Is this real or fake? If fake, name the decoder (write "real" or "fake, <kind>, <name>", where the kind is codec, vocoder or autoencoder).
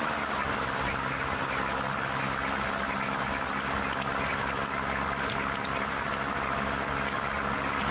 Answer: real